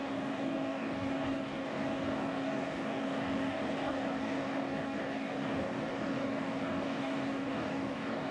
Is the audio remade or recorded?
remade